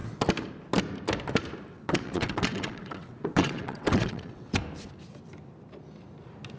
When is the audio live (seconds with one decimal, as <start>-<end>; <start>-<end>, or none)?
0.0-1.7; 4.6-6.6